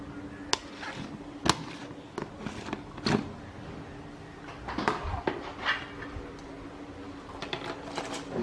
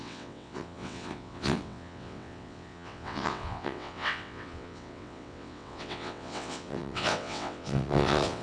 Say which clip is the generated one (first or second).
second